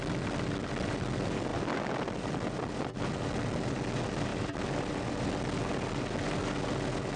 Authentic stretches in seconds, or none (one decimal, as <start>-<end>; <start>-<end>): 0.0-1.5; 3.8-4.3; 4.9-7.2